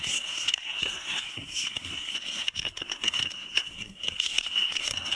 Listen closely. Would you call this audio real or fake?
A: fake